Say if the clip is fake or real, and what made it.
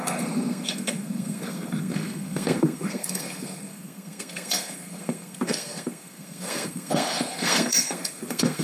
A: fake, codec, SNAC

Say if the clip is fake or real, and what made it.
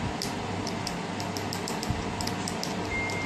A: real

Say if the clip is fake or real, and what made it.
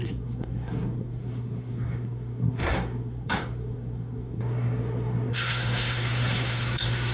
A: fake, codec, SNAC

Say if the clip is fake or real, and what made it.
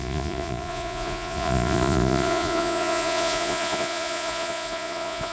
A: fake, vocoder, Vocos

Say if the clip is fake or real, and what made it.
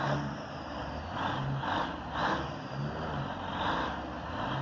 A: real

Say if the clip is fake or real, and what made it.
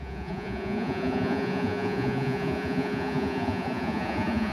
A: fake, vocoder, Vocos